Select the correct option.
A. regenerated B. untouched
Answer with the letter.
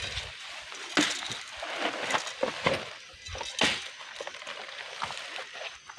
B